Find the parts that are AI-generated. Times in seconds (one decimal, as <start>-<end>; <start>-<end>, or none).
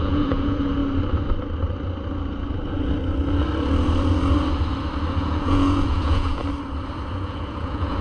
0.0-0.8; 5.1-6.4; 7.1-8.0